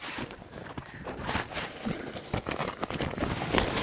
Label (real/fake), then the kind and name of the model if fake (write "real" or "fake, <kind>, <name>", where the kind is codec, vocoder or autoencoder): real